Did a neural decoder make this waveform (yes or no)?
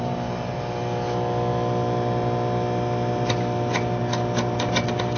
no